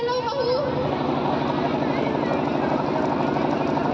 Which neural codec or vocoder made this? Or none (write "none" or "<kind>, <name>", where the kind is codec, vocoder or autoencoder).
none